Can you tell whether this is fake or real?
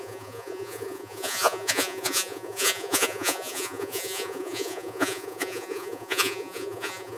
fake